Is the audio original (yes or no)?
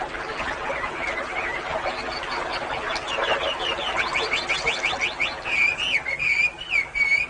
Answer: yes